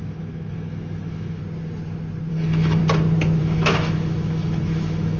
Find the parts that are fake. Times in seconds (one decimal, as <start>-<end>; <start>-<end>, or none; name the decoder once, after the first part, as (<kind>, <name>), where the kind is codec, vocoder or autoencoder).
0.0-1.4 (autoencoder, DAC-VAE); 2.3-2.8; 3.4-5.2